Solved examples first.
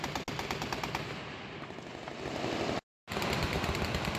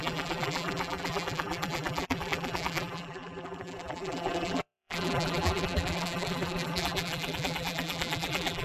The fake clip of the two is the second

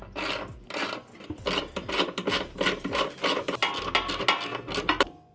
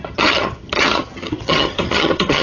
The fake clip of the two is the second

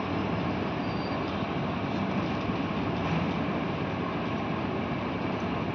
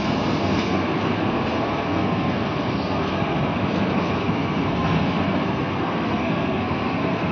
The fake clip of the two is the second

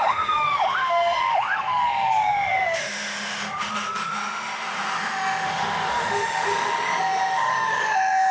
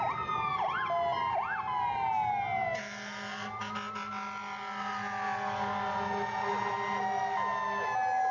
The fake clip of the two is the first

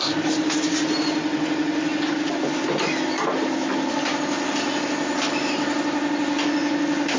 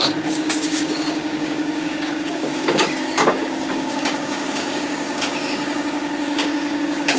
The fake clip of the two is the second